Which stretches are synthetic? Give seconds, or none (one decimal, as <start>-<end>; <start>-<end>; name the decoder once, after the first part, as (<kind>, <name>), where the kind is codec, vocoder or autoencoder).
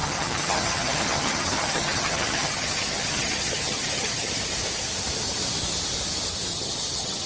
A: 0.0-4.4 (vocoder, HiFi-GAN); 6.5-7.3